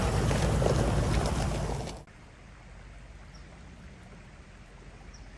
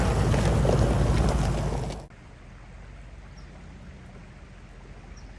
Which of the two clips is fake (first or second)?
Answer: first